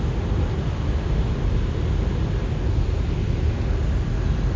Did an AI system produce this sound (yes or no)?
no